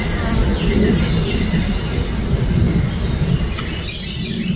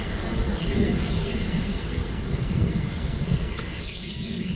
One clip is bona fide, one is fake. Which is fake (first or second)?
second